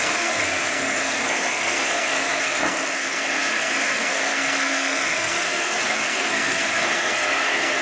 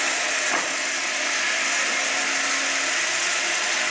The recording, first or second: second